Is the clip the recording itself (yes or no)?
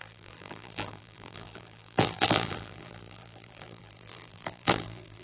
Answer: no